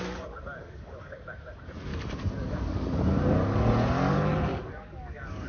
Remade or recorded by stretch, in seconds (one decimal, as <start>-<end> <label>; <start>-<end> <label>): 0.0-0.6 recorded; 0.6-1.2 remade; 1.2-1.9 recorded; 1.9-3.0 remade; 3.0-4.5 recorded; 4.5-5.5 remade